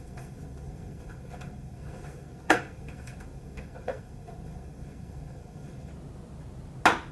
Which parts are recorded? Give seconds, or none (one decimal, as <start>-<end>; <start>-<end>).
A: 5.9-7.1